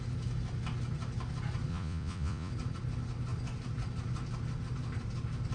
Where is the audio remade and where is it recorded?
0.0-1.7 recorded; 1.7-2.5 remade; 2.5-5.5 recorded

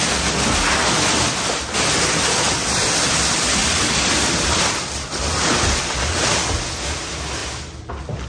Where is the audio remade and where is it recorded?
0.0-3.6 recorded; 3.6-4.7 remade; 4.7-7.4 recorded; 7.4-7.9 remade; 7.9-8.3 recorded

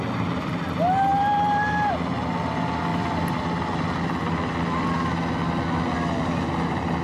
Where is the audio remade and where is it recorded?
0.0-1.1 recorded; 1.1-1.9 remade; 1.9-2.9 recorded; 2.9-4.0 remade; 4.0-7.0 recorded

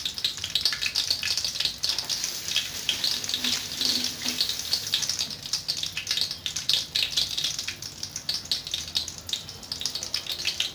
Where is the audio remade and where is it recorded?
0.0-10.7 recorded